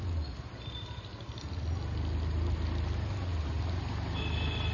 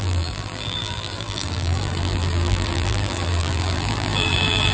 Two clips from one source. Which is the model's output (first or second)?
second